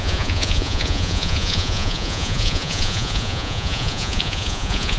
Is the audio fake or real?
fake